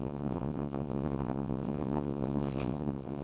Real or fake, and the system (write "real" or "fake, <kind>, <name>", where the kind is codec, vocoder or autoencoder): fake, vocoder, WaveNeXt